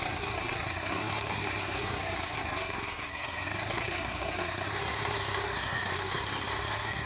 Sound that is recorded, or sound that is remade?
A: remade